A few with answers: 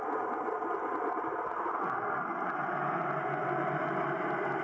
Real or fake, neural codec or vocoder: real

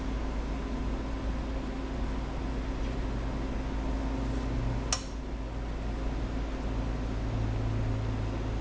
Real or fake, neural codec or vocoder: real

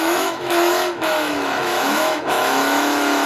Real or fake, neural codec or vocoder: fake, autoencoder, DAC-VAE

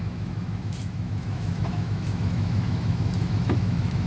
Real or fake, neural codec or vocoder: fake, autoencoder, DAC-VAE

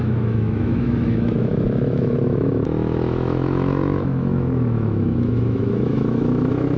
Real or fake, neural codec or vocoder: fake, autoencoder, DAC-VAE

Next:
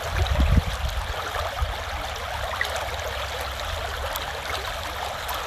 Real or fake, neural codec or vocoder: real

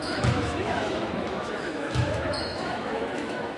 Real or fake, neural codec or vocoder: fake, autoencoder, DAC-VAE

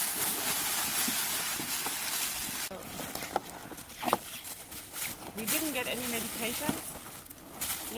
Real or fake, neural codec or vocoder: real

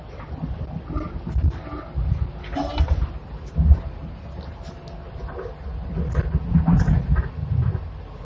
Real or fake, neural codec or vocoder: real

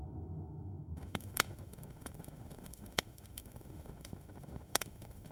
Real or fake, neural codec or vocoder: fake, autoencoder, DAC-VAE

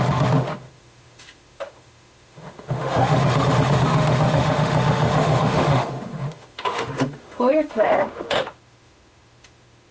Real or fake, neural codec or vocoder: fake, autoencoder, DAC-VAE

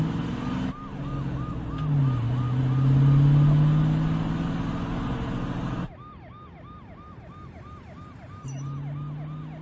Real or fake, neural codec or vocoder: real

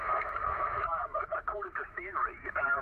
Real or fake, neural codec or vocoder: fake, autoencoder, DAC-VAE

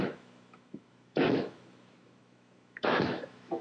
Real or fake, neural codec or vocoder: fake, autoencoder, DAC-VAE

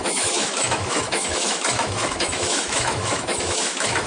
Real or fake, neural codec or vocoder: fake, autoencoder, DAC-VAE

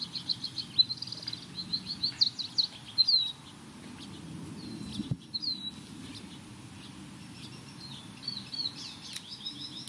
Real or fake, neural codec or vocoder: real